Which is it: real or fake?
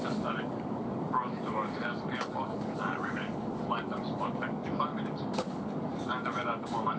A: fake